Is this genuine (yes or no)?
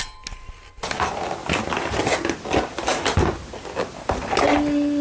yes